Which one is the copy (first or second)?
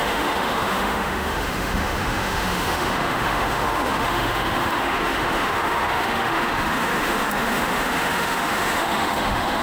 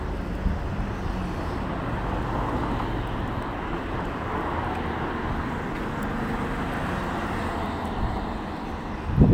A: first